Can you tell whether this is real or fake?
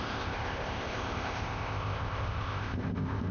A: fake